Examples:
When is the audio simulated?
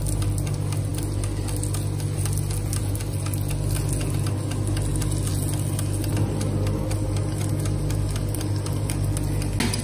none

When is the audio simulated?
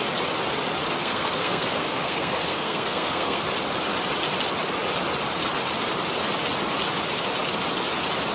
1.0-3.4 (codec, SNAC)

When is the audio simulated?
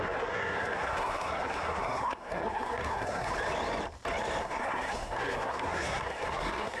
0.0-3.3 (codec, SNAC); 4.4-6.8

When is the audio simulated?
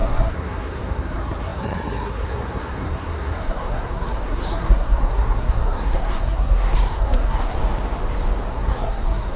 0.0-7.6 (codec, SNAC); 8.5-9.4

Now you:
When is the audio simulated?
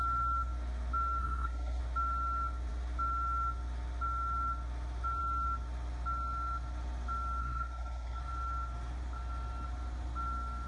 1.2-1.8 (codec, SNAC); 7.4-8.2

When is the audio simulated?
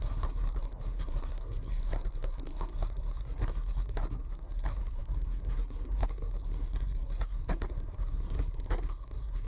0.0-9.5 (codec, SNAC)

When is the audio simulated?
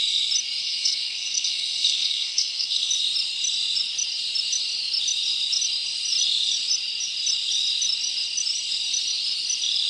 0.6-2.9 (codec, SNAC)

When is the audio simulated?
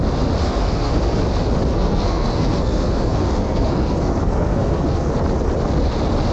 0.4-1.2 (codec, SNAC); 1.7-5.1